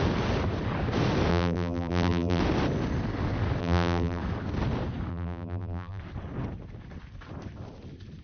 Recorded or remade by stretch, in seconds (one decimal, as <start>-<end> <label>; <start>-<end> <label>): 0.0-1.3 recorded; 1.3-2.4 remade; 2.4-3.6 recorded; 3.6-4.2 remade; 4.2-5.1 recorded; 5.1-6.0 remade; 6.0-8.2 recorded